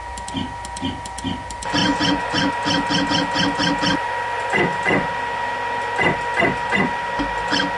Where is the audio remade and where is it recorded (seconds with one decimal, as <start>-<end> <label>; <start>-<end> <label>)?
0.0-1.8 recorded; 1.8-2.5 remade; 2.5-7.8 recorded